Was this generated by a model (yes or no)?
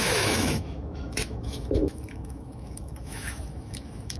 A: yes